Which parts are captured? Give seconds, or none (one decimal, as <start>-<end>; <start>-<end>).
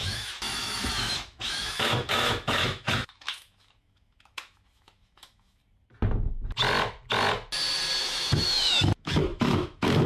5.6-8.0